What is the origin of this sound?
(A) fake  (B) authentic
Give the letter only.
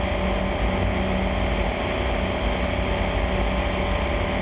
B